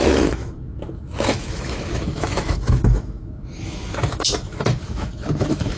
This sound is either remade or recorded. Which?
remade